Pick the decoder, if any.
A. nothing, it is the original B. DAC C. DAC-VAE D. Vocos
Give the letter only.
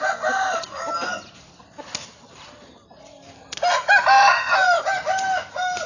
A